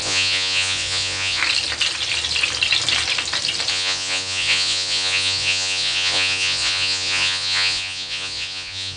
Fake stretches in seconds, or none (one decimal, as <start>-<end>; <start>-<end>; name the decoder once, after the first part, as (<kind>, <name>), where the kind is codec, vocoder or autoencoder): 0.0-1.4 (vocoder, Vocos); 3.7-9.0